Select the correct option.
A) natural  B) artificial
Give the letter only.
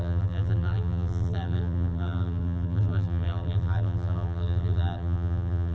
B